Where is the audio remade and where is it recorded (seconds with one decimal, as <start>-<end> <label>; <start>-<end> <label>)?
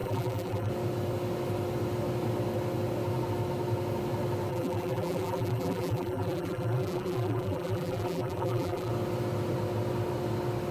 0.0-0.7 remade; 0.7-4.5 recorded; 4.5-8.9 remade; 8.9-10.7 recorded